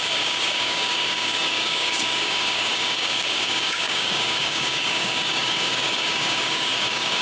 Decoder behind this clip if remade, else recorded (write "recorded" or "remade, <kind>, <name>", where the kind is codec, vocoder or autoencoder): remade, codec, DAC